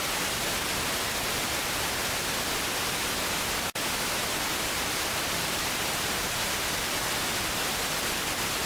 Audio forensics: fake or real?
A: real